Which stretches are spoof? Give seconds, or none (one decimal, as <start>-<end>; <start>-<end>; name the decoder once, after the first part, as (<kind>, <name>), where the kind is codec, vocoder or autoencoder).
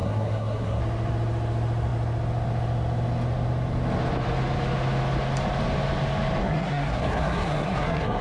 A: 0.0-0.8 (codec, SNAC); 6.4-8.2